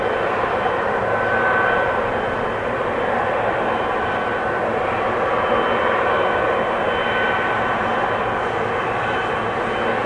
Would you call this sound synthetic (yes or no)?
no